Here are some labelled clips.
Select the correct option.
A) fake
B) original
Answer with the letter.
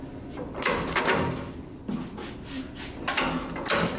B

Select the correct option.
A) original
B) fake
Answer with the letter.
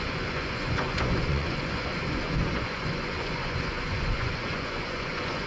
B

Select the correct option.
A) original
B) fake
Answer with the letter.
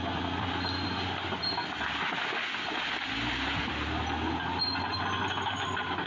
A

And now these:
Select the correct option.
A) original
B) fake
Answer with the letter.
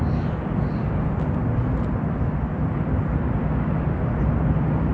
A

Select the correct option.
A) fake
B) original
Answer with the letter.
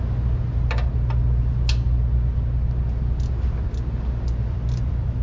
B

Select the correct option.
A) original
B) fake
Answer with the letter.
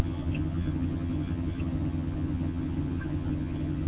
B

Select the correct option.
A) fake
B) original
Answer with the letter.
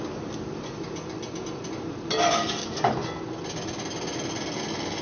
B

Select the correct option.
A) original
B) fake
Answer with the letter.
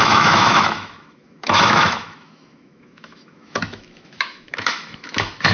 B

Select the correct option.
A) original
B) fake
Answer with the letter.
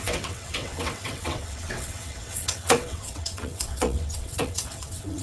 B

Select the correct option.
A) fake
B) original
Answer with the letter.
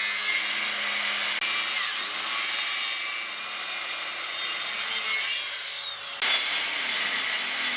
B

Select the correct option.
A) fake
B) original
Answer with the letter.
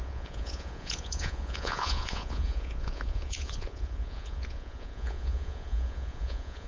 A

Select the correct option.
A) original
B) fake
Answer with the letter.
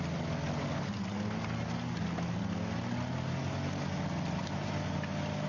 A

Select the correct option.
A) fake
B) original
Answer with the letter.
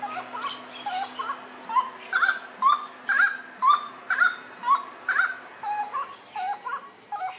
B